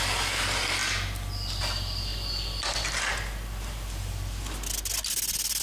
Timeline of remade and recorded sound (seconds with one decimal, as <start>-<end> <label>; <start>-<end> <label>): 0.0-5.6 recorded